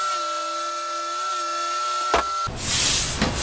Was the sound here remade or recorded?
recorded